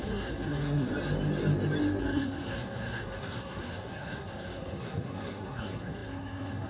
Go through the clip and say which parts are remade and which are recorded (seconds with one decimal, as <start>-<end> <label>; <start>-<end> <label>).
0.0-0.9 remade; 0.9-2.0 recorded; 2.0-6.7 remade